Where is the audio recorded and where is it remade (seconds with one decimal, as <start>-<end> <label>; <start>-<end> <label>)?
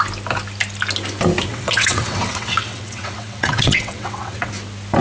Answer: 0.0-1.5 recorded; 1.5-4.5 remade; 4.5-5.0 recorded